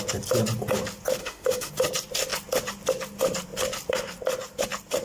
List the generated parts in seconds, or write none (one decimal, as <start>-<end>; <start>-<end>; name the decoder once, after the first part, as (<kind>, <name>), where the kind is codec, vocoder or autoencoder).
1.2-1.7 (autoencoder, DAC-VAE)